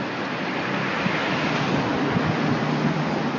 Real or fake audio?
real